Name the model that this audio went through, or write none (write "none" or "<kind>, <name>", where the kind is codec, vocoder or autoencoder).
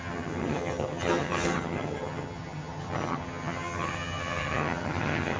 vocoder, HiFi-GAN